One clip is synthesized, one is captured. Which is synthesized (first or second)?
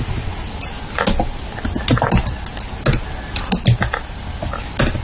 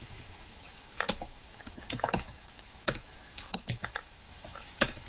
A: second